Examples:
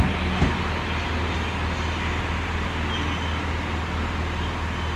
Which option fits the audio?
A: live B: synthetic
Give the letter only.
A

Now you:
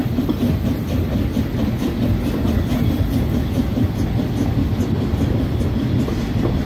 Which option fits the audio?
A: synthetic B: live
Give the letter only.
B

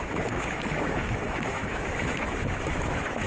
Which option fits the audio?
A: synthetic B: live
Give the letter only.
A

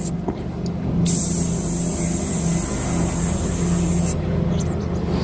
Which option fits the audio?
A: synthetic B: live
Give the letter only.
B